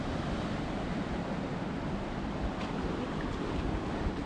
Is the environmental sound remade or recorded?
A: recorded